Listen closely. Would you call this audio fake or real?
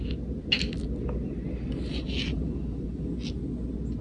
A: real